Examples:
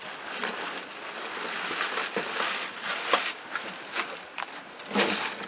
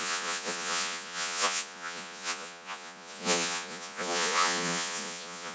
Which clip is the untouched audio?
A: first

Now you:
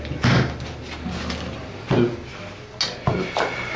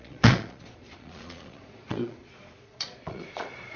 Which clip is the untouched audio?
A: first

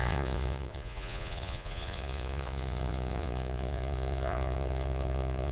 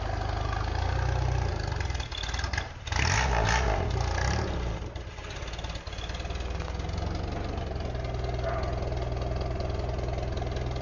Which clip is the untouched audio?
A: second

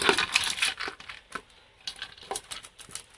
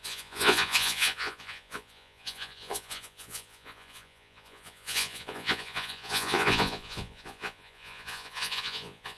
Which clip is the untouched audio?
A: first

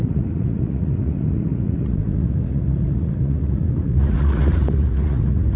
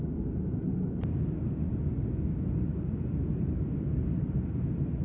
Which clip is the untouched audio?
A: second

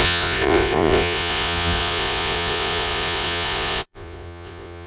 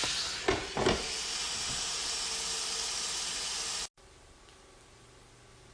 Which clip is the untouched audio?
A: second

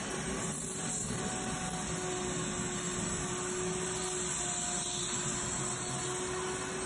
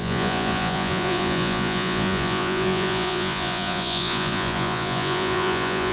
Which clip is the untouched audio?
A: first